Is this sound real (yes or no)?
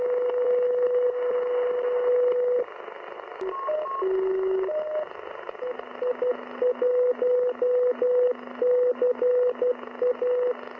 yes